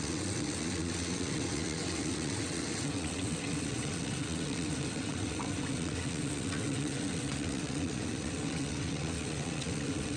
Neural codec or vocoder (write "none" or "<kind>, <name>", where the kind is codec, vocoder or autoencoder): vocoder, WaveNeXt